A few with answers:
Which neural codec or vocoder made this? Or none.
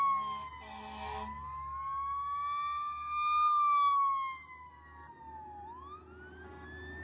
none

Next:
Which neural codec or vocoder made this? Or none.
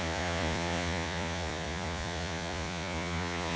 vocoder, Vocos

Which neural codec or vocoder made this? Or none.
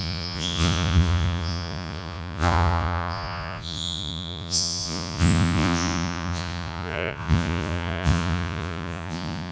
vocoder, Vocos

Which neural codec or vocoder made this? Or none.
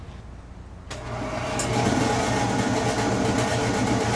none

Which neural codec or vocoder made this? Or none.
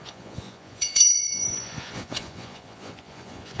vocoder, Vocos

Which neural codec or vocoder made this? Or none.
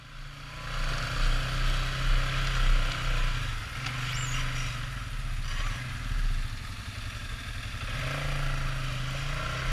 none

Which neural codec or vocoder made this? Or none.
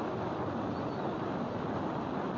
none